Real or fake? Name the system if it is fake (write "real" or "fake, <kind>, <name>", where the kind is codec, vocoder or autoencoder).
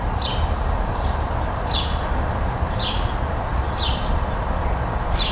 real